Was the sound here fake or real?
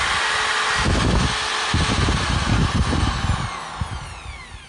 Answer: real